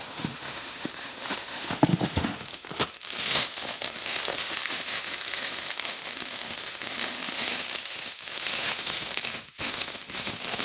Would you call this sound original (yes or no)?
no